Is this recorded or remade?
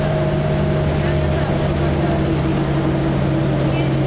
recorded